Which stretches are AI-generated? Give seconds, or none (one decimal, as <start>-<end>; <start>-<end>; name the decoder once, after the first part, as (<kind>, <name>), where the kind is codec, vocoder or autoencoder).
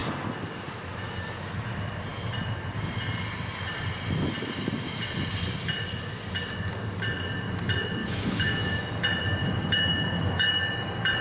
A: 8.0-8.8 (autoencoder, DAC-VAE); 9.4-10.5